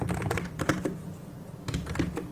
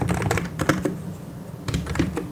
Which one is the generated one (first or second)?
second